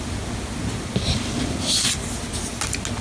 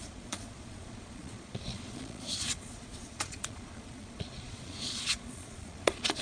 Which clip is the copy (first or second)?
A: second